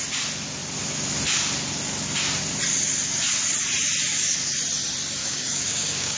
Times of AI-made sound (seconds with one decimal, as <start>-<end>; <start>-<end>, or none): 5.2-6.2